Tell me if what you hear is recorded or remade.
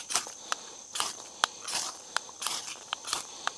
remade